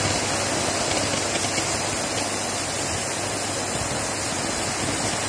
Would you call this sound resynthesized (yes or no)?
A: no